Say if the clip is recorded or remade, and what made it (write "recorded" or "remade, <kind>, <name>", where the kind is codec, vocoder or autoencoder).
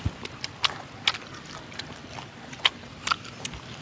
recorded